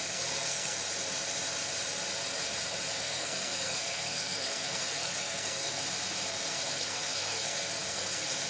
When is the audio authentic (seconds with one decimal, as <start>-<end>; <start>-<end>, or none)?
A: 0.8-3.0; 5.8-6.3